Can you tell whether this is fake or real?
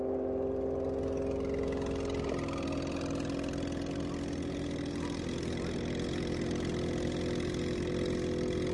real